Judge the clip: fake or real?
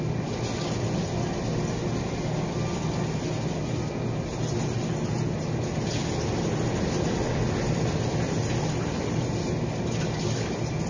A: real